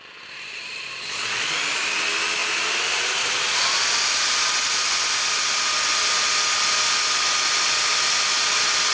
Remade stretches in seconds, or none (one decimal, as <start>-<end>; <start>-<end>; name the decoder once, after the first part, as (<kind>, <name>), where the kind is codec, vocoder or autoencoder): none